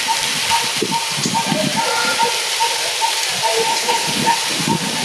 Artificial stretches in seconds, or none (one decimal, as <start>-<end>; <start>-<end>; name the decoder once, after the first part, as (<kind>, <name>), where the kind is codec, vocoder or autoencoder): 3.7-4.2 (codec, HILCodec)